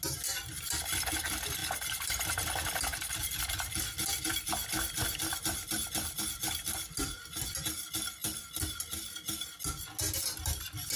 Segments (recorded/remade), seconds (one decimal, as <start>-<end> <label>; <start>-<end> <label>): 0.0-11.0 recorded